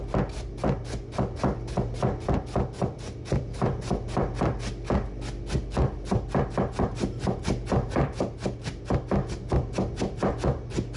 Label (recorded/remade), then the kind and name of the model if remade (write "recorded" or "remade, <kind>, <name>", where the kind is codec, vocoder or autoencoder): recorded